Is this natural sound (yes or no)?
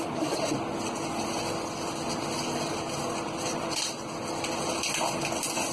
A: yes